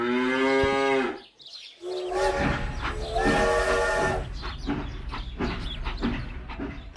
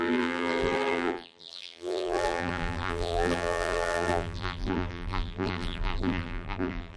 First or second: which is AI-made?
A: second